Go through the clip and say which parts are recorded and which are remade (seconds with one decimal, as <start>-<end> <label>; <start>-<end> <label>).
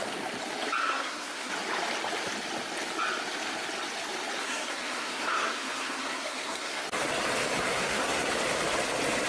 0.0-0.8 recorded; 0.8-1.5 remade; 1.5-4.4 recorded; 4.4-6.8 remade; 6.8-7.7 recorded; 7.7-8.3 remade; 8.3-9.3 recorded